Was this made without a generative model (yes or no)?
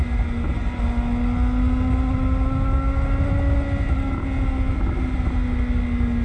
yes